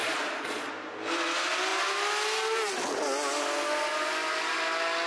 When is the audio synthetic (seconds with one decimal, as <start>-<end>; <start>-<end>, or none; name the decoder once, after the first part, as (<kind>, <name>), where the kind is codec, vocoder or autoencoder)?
0.0-0.7 (vocoder, Vocos)